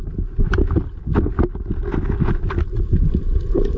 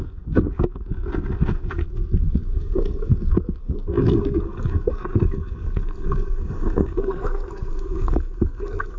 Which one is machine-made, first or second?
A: second